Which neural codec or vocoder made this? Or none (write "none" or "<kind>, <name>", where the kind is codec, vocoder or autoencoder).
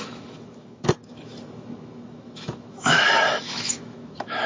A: autoencoder, DAC-VAE